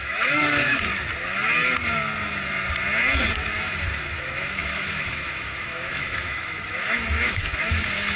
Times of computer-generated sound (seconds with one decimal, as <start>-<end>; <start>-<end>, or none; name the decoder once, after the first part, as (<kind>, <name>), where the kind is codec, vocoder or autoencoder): 0.0-0.9 (autoencoder, DAC-VAE); 3.4-8.2